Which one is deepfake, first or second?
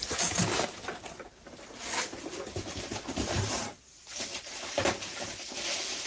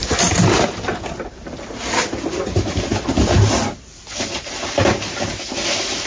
first